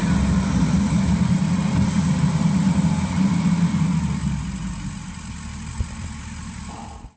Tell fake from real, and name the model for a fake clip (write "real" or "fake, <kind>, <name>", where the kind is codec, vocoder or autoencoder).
real